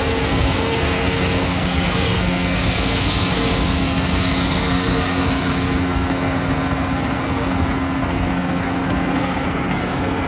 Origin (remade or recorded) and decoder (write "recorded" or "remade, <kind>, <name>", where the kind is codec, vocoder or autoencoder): remade, codec, SNAC